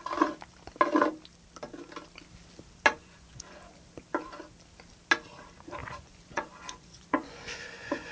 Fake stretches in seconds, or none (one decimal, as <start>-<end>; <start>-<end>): 3.0-3.6; 5.8-8.1